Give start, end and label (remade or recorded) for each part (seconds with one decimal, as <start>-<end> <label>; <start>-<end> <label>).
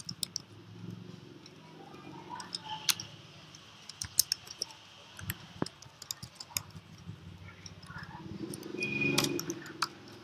0.0-2.6 recorded; 2.6-3.6 remade; 3.6-10.2 recorded